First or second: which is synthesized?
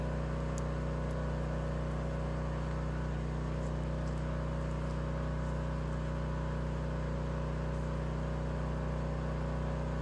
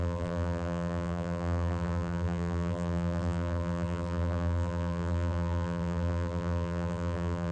second